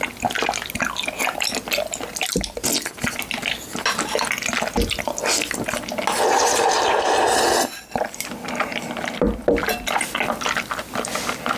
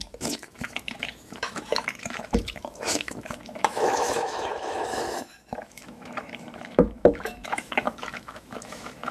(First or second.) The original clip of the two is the first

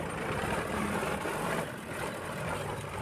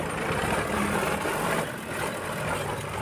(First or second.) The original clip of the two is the second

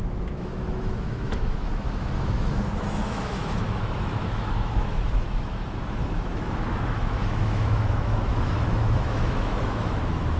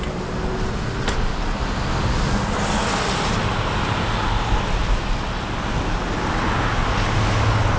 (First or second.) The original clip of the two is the second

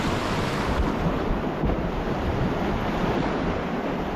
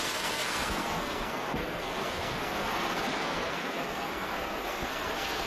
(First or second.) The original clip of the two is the first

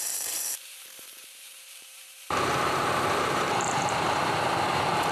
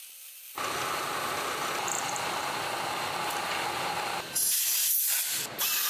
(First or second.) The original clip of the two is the second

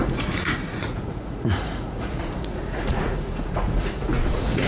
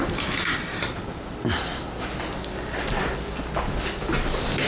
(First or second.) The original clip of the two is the second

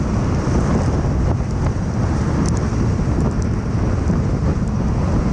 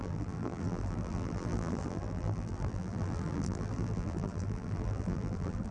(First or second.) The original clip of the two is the first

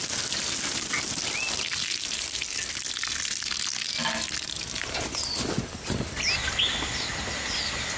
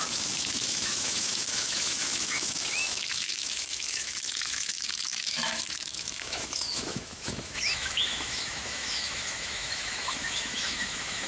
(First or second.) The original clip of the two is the first